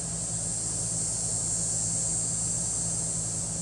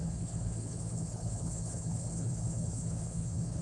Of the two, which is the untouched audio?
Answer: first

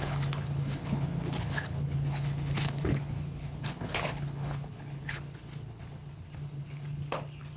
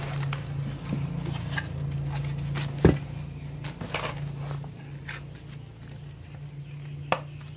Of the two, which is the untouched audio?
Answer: second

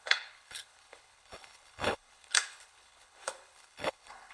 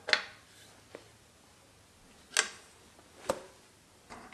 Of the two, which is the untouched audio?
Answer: second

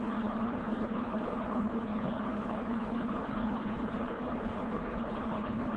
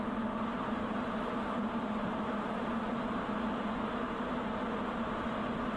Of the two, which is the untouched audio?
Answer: second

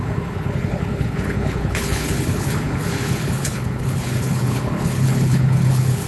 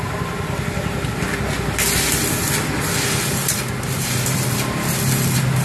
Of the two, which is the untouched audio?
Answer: second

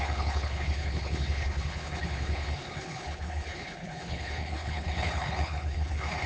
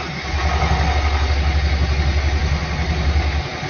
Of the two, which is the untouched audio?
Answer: second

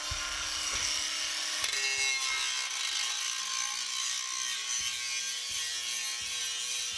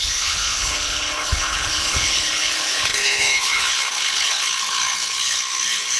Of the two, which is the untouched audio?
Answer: first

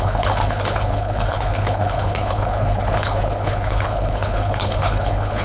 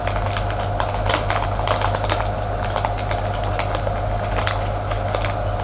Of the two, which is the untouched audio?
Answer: second